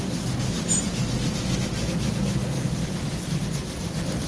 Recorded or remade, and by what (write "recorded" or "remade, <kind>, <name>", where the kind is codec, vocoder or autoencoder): recorded